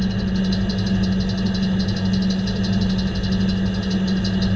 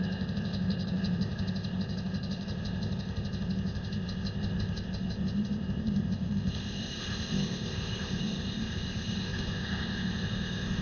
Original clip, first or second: first